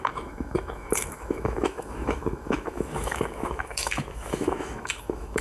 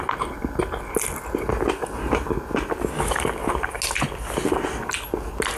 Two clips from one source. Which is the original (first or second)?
second